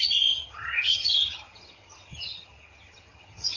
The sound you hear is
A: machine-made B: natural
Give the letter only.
A